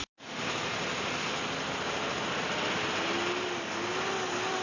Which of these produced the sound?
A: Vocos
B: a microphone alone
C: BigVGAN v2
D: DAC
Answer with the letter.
B